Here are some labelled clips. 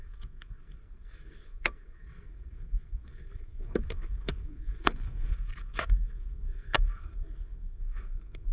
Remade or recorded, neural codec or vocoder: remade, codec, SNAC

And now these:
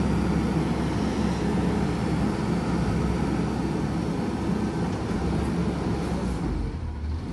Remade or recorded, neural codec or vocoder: recorded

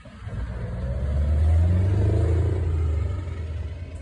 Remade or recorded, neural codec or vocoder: recorded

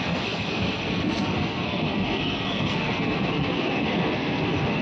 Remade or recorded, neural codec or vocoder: remade, codec, SNAC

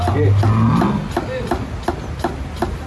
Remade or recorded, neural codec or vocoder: recorded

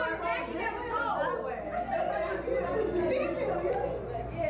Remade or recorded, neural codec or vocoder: recorded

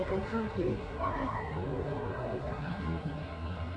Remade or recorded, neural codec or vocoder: remade, codec, SNAC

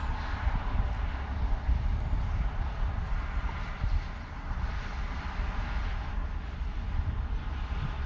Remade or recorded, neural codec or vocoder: recorded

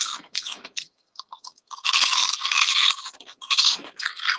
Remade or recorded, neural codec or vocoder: remade, codec, SNAC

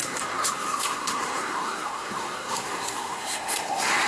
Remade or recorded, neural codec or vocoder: remade, codec, SNAC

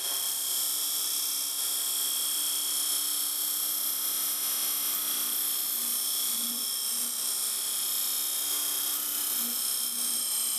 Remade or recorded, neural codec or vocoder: recorded